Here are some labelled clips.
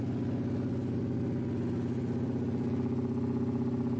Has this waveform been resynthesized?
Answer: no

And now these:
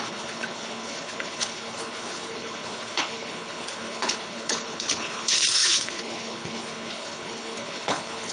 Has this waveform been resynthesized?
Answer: yes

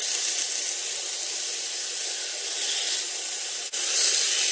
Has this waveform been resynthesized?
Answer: no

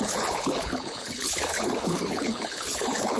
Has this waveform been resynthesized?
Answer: yes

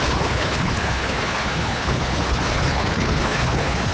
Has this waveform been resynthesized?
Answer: yes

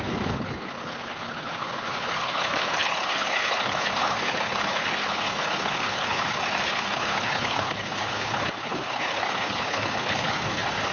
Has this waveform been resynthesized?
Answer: yes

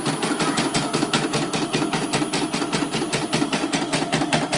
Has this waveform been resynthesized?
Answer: no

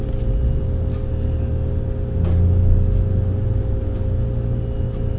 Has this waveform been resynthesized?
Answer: no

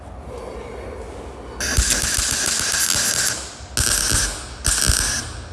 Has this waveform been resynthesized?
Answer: no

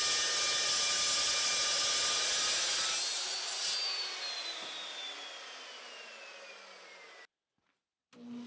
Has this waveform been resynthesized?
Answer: no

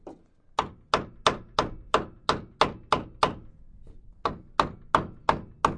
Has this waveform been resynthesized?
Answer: no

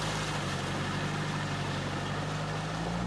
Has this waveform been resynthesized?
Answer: no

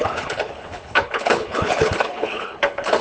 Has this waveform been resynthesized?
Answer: yes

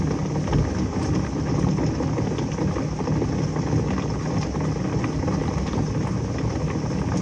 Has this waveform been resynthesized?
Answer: no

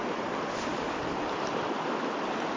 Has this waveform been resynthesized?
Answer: no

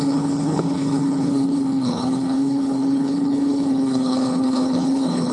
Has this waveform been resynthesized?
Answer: yes